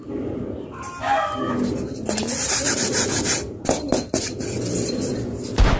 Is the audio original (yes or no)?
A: yes